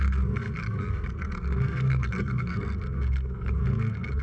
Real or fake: fake